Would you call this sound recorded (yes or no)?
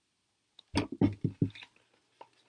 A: yes